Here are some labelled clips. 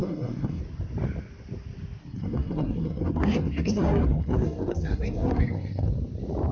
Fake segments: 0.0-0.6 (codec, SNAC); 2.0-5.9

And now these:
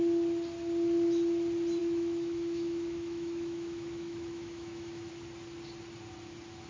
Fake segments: 1.8-5.1 (autoencoder, DAC-VAE)

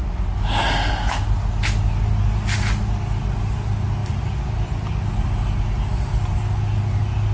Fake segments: 0.0-0.9 (vocoder, BigVGAN v2)